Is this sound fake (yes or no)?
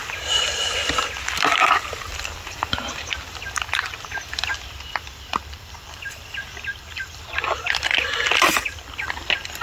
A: yes